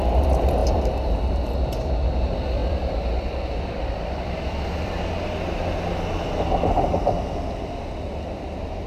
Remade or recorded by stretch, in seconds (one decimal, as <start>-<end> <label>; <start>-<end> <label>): 0.0-0.6 recorded; 0.6-1.3 remade; 1.3-2.6 recorded; 2.6-5.0 remade; 5.0-8.9 recorded